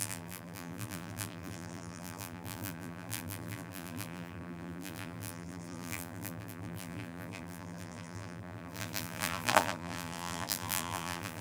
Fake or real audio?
fake